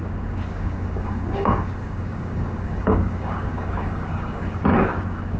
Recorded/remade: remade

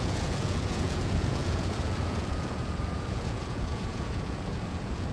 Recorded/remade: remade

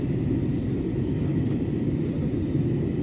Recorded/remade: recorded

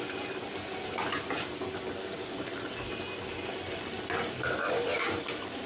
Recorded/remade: recorded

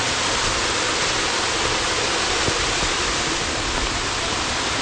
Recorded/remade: recorded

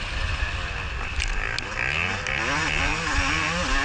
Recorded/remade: recorded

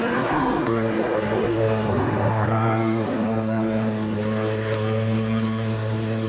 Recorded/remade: remade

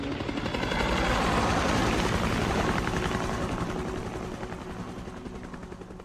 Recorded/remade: recorded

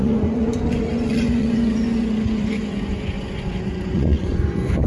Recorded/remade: remade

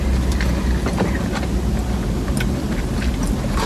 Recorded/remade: recorded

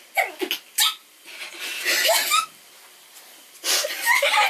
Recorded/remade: recorded